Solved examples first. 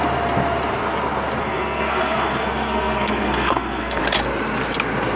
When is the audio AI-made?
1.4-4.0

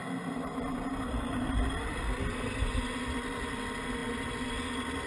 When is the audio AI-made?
none

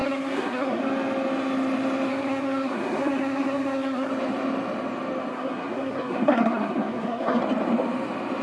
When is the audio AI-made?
0.0-0.8; 2.1-4.1; 5.3-7.4

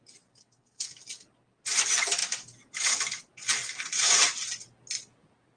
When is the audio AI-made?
0.4-0.9